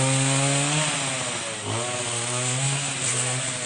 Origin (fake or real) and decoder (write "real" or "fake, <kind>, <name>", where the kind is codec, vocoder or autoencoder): real